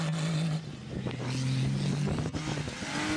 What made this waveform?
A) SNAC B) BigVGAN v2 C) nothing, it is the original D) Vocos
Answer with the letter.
C